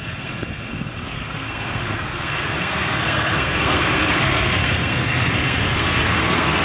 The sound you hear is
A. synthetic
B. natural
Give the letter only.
A